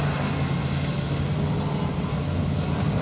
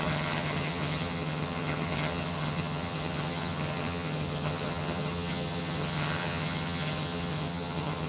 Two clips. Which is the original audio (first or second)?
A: first